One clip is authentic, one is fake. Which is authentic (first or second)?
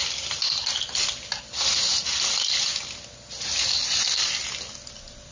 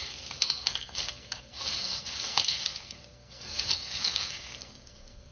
first